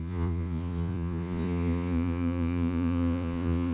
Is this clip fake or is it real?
fake